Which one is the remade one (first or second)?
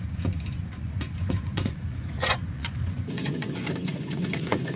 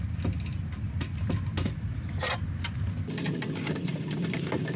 first